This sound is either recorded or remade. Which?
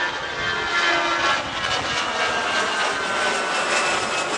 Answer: recorded